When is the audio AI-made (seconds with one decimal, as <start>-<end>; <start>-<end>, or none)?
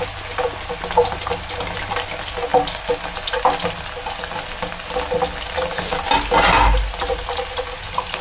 none